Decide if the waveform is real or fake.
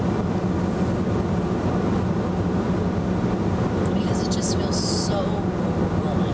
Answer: real